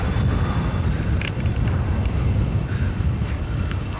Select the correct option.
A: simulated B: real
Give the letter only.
B